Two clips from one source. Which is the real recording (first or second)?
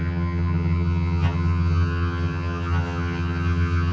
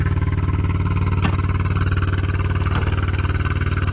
second